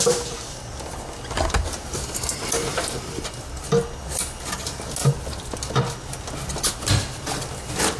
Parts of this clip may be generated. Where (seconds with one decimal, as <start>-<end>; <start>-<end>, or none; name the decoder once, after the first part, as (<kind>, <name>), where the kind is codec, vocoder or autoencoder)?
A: none